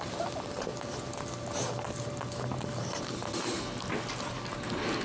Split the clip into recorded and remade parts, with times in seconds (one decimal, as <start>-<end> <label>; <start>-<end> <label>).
0.0-5.0 recorded